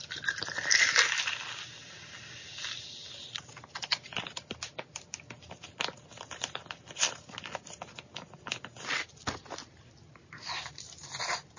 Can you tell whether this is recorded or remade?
recorded